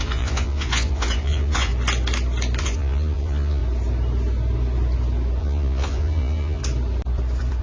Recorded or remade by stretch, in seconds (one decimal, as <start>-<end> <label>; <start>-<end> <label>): 0.0-1.7 remade; 1.7-2.6 recorded; 2.6-3.6 remade; 3.6-5.4 recorded; 5.4-6.6 remade; 6.6-7.6 recorded